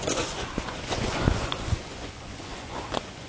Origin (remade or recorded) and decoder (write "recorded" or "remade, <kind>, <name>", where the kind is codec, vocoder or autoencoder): remade, vocoder, Vocos